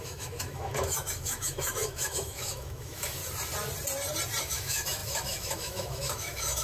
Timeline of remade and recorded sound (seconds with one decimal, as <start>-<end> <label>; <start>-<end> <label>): 0.0-3.2 remade; 3.2-4.4 recorded; 4.4-6.6 remade